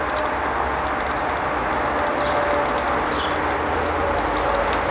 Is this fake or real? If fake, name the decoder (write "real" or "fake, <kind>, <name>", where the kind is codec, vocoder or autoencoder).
real